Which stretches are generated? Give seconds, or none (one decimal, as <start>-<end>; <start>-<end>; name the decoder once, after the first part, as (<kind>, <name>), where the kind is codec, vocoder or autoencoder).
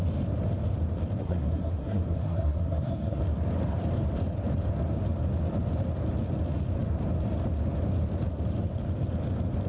1.2-3.2 (codec, SNAC)